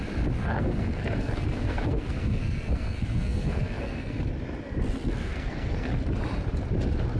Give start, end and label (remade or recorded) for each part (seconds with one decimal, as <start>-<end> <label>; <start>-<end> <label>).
0.0-0.4 recorded; 0.4-4.2 remade; 4.2-5.2 recorded; 5.2-5.9 remade; 5.9-7.2 recorded